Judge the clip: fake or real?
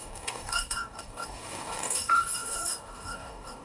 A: fake